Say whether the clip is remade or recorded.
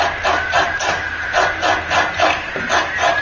recorded